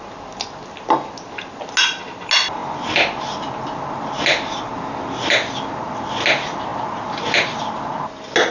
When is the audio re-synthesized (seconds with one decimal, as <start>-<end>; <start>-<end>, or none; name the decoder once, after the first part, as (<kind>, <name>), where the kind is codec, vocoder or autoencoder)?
none